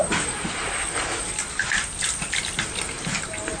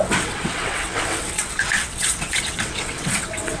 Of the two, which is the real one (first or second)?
first